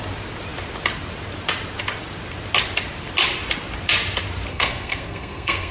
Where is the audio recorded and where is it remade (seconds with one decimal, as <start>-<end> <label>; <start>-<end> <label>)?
0.0-4.5 recorded; 4.5-5.7 remade

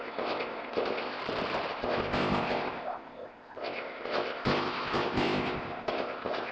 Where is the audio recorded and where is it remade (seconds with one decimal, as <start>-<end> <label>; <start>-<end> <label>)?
0.0-1.2 remade; 1.2-1.7 recorded; 1.7-6.5 remade

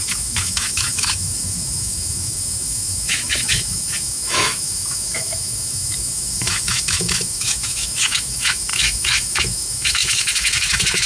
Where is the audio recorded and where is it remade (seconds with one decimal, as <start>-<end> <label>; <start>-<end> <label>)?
0.0-11.1 remade

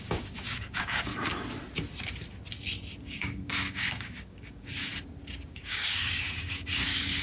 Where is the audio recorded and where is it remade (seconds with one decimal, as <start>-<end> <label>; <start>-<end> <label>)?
0.0-1.1 remade; 1.1-3.0 recorded; 3.0-4.9 remade; 4.9-5.5 recorded; 5.5-7.2 remade

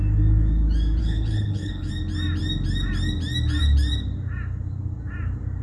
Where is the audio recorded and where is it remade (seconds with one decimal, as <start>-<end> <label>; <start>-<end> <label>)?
0.0-1.0 recorded; 1.0-1.9 remade; 1.9-5.6 recorded

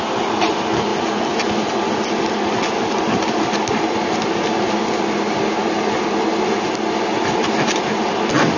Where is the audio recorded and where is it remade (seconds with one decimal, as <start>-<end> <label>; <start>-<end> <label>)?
0.0-8.6 recorded